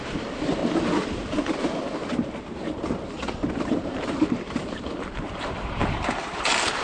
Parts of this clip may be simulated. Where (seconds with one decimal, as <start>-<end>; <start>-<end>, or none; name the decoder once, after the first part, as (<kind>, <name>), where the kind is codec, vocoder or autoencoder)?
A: 0.0-0.6 (vocoder, BigVGAN v2); 3.5-6.8